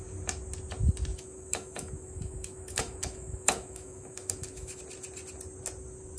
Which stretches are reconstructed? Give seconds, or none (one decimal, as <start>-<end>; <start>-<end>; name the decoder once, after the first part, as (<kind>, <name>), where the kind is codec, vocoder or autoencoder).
1.1-4.8 (autoencoder, DAC-VAE)